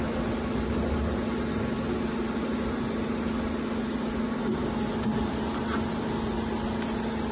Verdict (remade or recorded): recorded